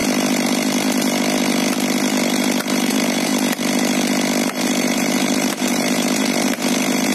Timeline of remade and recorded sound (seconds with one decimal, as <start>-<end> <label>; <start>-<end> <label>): 0.0-2.9 recorded; 2.9-3.3 remade; 3.3-4.4 recorded; 4.4-7.1 remade